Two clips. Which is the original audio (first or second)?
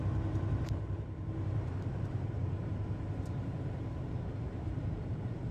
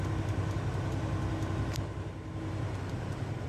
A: second